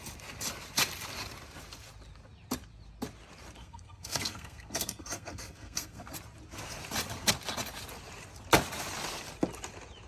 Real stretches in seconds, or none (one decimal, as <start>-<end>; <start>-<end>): 0.0-3.6; 6.1-10.1